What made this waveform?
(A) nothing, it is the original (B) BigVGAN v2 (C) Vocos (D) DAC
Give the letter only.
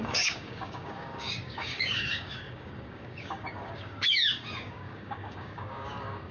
D